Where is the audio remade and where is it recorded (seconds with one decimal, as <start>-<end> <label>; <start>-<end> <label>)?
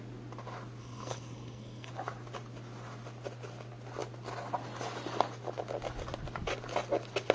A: 0.0-0.8 recorded; 0.8-1.9 remade; 1.9-7.3 recorded